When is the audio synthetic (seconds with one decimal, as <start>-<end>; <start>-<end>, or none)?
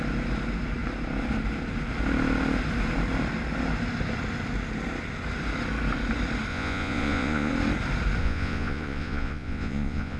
6.5-7.5; 8.2-10.2